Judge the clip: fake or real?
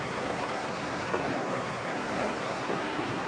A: fake